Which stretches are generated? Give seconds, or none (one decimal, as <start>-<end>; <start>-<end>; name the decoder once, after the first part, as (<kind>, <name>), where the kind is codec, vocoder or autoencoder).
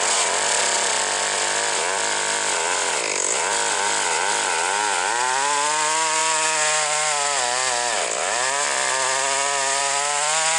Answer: none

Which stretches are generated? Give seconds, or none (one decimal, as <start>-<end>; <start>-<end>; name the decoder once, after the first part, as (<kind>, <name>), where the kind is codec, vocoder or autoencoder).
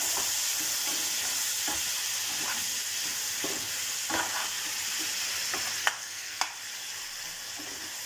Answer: 5.8-6.4 (codec, SNAC)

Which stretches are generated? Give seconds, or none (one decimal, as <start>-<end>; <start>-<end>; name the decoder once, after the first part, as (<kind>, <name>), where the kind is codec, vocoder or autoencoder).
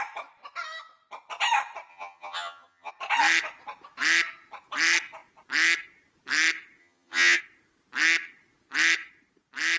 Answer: 1.9-2.9 (vocoder, HiFi-GAN); 6.8-7.4